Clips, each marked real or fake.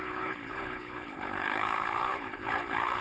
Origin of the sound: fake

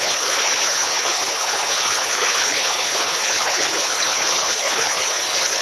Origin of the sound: fake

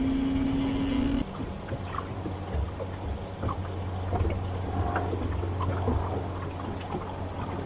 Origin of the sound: real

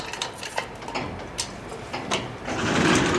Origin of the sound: real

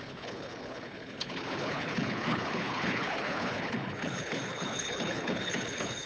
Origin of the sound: fake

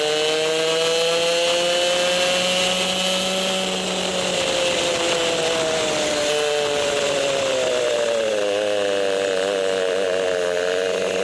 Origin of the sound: real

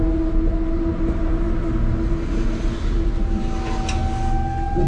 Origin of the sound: real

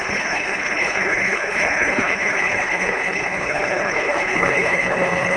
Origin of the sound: fake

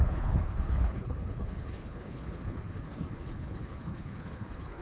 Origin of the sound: fake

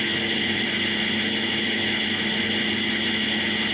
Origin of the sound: real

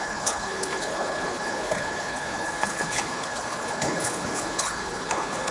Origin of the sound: fake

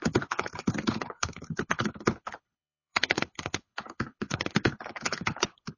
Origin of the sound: fake